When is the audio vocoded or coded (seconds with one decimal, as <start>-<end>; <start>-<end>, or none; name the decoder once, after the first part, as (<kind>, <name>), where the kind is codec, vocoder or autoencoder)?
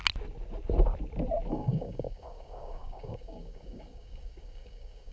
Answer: 1.5-5.1 (codec, DAC)